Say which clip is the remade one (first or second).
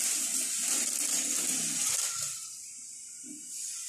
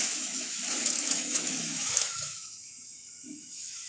second